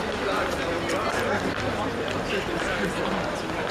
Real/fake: real